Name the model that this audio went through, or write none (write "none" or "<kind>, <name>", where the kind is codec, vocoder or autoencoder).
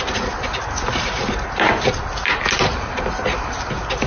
none